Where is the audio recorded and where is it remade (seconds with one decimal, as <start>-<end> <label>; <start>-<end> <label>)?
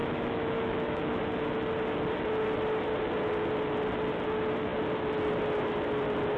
0.0-1.2 remade; 1.2-6.4 recorded